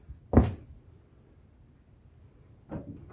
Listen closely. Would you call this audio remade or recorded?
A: recorded